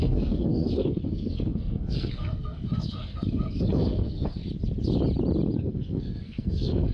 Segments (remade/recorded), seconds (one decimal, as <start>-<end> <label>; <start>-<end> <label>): 0.0-4.4 remade; 4.4-5.6 recorded; 5.6-6.9 remade